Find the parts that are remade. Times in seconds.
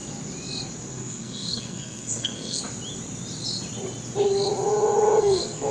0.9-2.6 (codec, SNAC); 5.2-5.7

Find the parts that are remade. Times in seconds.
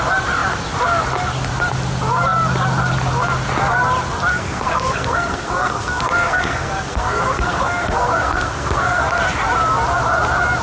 4.3-9.0 (codec, SNAC)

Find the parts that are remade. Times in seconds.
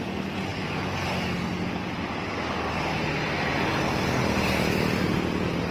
none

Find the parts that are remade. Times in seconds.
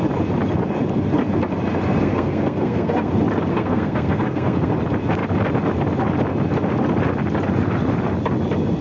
2.0-3.1 (codec, SNAC); 3.5-4.7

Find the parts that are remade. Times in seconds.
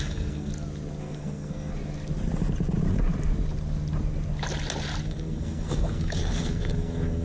0.0-0.5 (codec, SNAC); 1.0-1.7; 5.0-7.2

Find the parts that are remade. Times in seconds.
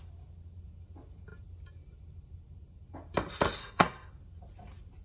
3.6-4.1 (codec, SNAC)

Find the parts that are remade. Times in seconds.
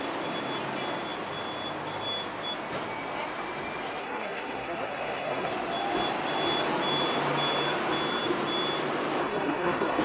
4.0-5.5 (codec, SNAC); 9.2-10.0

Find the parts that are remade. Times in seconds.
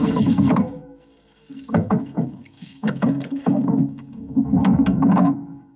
0.0-5.8 (codec, SNAC)